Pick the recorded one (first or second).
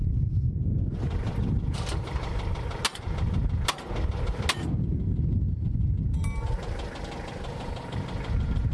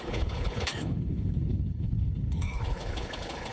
first